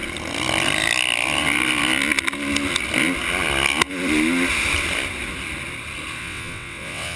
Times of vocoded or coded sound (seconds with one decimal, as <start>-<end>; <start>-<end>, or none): 6.2-7.2